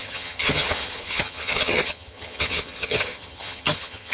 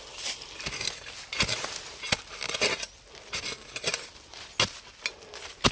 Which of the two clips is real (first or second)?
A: second